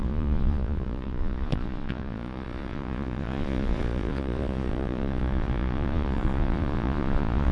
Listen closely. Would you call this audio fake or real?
fake